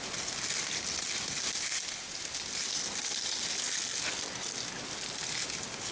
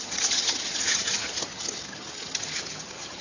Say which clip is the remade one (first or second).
second